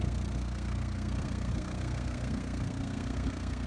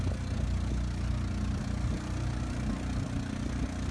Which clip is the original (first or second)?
second